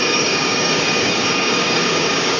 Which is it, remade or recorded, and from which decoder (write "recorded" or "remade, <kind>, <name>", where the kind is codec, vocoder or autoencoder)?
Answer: remade, codec, DAC